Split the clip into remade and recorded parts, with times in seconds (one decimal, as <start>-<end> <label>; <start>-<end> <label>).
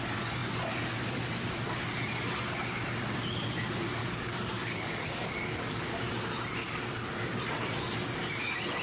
0.0-4.0 recorded; 4.0-6.1 remade; 6.1-6.6 recorded; 6.6-7.1 remade; 7.1-8.8 recorded